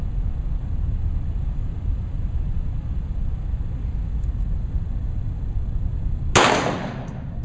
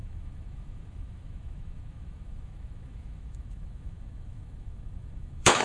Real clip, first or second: first